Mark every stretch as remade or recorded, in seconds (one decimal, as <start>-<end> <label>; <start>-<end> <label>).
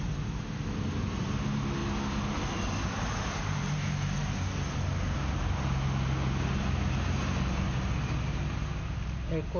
0.0-9.6 recorded